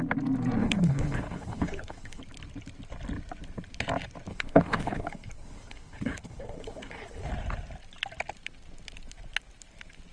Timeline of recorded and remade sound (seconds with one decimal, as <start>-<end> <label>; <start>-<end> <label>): 0.0-0.6 recorded; 0.6-2.2 remade; 2.2-4.3 recorded; 4.3-7.3 remade; 7.3-10.1 recorded